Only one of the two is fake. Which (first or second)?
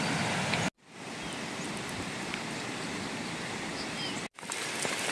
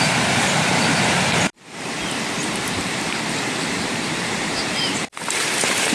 second